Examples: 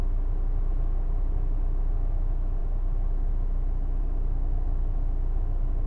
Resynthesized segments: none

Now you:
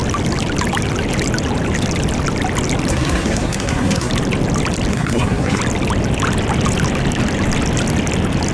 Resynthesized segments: 2.9-4.1 (codec, SNAC); 4.9-5.6